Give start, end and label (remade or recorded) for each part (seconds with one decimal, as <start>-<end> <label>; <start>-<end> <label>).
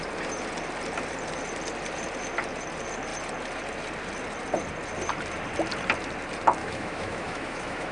0.0-6.6 recorded; 6.6-7.9 remade